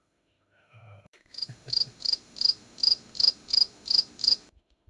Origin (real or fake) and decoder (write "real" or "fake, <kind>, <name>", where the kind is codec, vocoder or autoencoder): fake, autoencoder, DAC-VAE